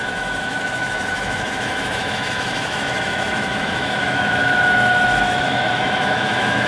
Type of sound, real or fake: fake